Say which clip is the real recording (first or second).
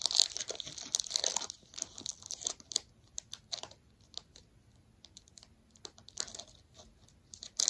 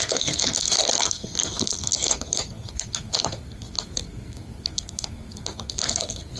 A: first